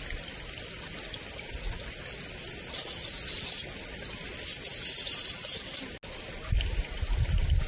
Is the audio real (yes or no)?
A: yes